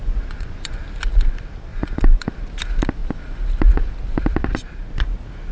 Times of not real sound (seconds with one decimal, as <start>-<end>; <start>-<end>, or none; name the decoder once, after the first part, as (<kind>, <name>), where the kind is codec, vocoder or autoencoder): 0.0-0.8 (vocoder, Vocos); 1.7-2.3